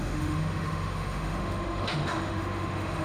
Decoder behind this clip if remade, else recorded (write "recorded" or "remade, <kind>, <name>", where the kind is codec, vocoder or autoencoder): remade, autoencoder, DAC-VAE